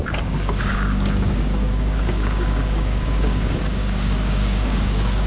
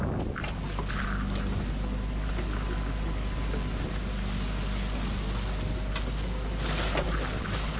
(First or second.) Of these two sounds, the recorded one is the second